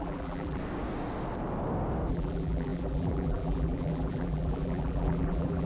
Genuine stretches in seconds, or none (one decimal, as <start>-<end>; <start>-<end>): 0.6-2.1